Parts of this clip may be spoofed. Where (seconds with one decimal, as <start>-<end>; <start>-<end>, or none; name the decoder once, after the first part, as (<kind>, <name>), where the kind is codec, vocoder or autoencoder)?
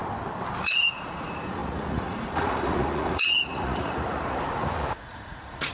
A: 0.6-5.7 (vocoder, Vocos)